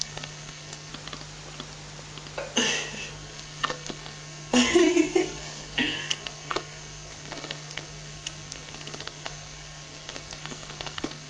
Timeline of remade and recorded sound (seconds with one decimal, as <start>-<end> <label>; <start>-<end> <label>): 0.0-0.9 remade; 0.9-3.1 recorded; 3.1-11.3 remade